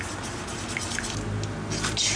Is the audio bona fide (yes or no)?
yes